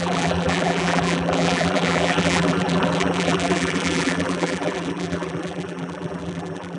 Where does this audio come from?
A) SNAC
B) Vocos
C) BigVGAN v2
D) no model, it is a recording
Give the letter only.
C